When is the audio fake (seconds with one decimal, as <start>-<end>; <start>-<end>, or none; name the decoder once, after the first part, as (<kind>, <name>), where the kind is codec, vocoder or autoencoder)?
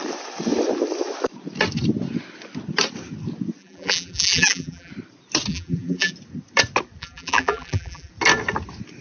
3.6-4.9 (vocoder, BigVGAN v2); 5.5-6.1; 7.0-8.1